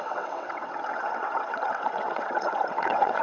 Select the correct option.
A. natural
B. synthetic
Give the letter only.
B